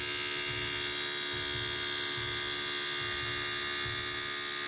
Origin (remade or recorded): recorded